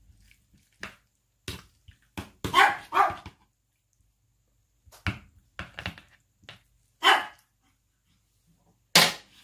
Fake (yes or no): no